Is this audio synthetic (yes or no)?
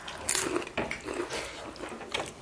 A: no